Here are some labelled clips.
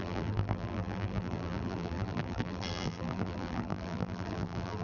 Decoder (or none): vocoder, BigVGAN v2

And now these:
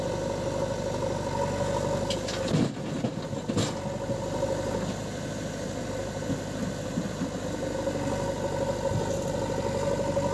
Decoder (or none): none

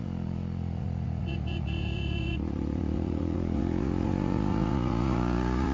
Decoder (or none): vocoder, Vocos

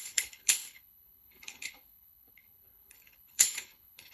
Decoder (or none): codec, HILCodec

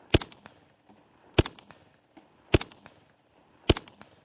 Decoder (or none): none